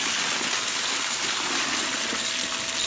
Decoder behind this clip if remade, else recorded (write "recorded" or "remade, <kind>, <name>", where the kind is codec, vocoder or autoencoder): recorded